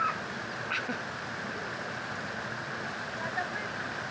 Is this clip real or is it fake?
real